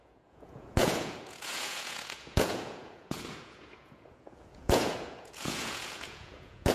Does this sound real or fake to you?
fake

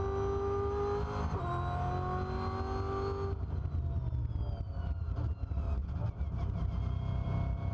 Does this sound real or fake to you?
real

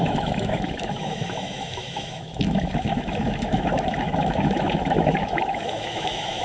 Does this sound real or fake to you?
fake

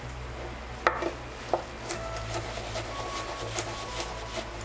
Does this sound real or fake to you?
real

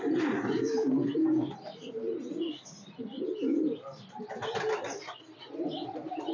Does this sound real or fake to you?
real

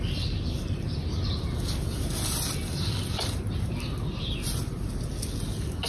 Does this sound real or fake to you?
real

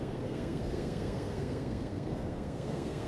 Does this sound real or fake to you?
fake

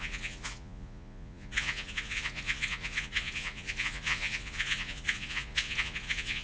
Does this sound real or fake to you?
fake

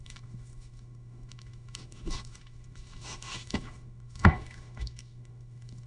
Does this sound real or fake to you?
fake